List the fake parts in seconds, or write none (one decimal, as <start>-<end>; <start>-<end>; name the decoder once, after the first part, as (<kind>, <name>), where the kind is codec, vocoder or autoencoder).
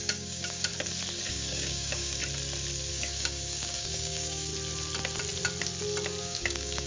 0.0-0.7 (codec, DAC); 1.3-2.2; 2.9-4.5; 6.2-6.9